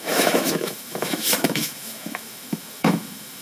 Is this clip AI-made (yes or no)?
yes